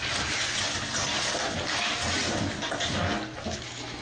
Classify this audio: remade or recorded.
recorded